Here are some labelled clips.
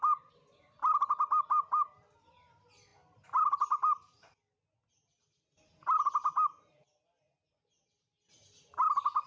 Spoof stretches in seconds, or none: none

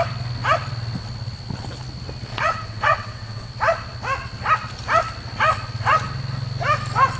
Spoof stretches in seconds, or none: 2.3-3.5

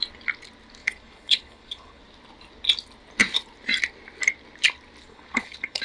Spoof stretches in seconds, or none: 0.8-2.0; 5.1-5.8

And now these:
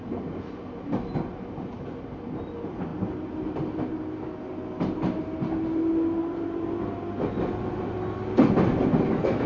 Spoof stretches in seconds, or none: 6.2-6.7

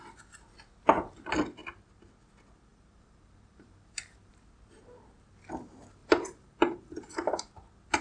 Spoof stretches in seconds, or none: 2.7-4.3; 6.0-7.1

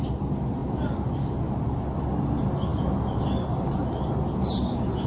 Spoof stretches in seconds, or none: none

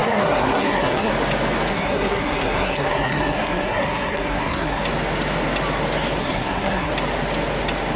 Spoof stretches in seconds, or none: 0.0-1.1; 1.7-4.8; 6.2-6.9